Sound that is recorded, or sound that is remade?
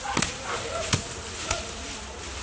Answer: recorded